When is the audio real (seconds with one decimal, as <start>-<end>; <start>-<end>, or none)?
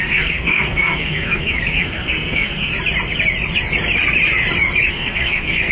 2.7-4.9